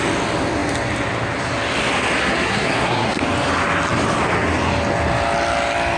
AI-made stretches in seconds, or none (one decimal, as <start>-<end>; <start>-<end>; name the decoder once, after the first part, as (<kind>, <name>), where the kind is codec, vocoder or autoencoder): 2.2-3.2 (codec, SNAC)